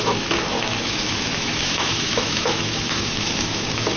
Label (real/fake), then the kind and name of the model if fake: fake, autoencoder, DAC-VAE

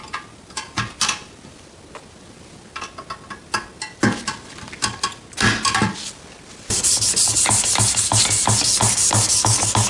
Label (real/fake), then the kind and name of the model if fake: real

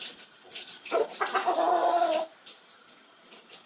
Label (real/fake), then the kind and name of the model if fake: real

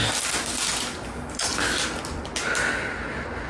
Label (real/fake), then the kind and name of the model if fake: real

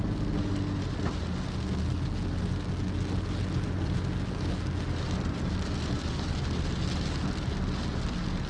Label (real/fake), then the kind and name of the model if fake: real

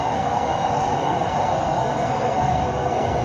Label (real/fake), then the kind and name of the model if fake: fake, codec, SNAC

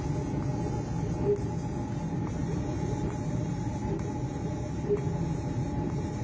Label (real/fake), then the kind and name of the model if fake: real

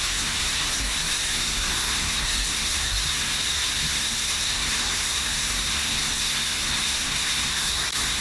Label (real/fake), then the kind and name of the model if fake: fake, codec, SNAC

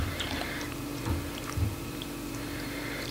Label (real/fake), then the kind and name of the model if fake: fake, vocoder, BigVGAN v2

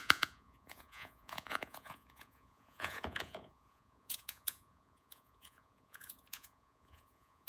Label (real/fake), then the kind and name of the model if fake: fake, vocoder, Vocos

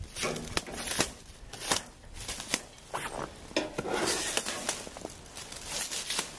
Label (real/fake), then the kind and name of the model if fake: real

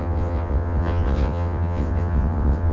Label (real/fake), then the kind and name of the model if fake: fake, vocoder, WaveNeXt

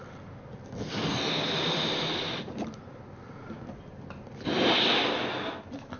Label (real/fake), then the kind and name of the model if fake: real